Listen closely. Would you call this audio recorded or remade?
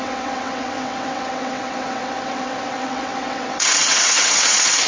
remade